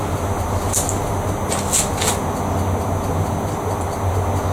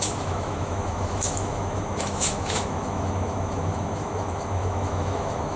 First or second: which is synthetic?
second